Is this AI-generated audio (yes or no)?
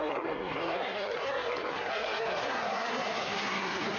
yes